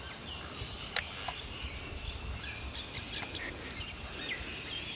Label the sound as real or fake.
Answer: real